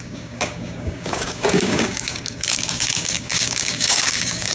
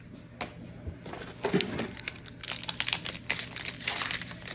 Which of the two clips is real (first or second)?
second